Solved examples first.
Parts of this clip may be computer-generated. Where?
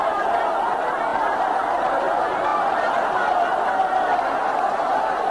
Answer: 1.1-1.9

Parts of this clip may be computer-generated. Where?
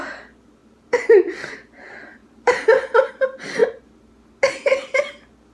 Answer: 0.6-1.5; 2.2-3.1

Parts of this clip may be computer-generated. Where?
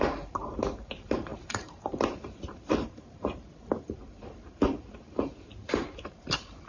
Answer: 0.0-6.7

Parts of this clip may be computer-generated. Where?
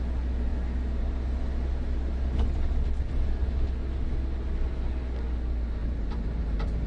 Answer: 5.8-6.9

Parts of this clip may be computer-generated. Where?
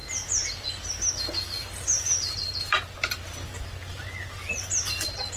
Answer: 4.4-5.4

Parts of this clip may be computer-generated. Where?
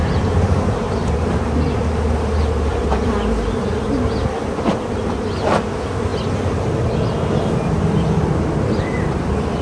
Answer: 0.0-3.7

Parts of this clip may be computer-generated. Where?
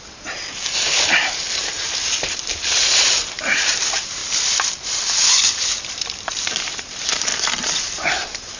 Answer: 0.0-4.2; 5.9-7.3; 8.1-8.6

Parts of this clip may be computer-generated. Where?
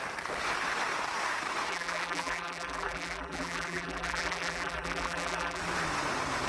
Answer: 1.7-5.6